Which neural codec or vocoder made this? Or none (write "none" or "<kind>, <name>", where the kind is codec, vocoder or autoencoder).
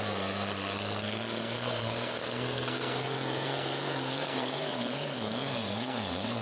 codec, SNAC